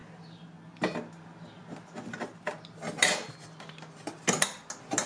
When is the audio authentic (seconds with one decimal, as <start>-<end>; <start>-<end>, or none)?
0.0-5.1